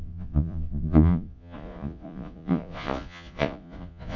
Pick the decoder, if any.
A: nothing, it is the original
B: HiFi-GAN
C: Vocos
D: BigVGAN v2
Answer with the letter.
C